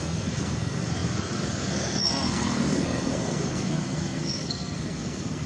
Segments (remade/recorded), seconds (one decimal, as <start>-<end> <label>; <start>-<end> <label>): 0.0-5.5 remade